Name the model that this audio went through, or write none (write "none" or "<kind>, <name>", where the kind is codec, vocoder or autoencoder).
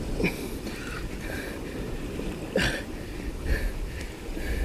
none